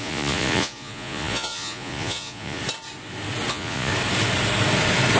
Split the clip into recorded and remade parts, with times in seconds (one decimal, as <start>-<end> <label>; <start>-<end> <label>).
0.0-2.6 remade; 2.6-3.5 recorded; 3.5-3.9 remade; 3.9-5.2 recorded